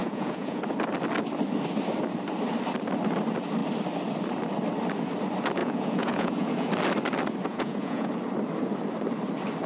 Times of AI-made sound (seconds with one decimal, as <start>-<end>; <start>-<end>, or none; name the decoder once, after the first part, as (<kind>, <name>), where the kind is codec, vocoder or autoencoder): 0.0-0.6 (vocoder, Vocos); 5.6-6.7; 7.5-8.1